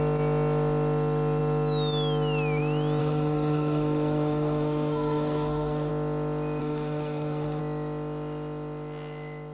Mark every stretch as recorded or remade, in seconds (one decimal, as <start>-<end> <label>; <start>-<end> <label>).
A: 0.0-3.0 recorded; 3.0-5.9 remade; 5.9-6.6 recorded; 6.6-7.6 remade; 7.6-9.5 recorded